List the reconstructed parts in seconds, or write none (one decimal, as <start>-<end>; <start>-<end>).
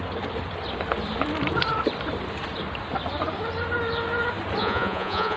4.6-5.4